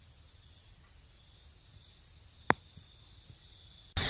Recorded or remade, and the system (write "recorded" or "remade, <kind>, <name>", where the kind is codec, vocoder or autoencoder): recorded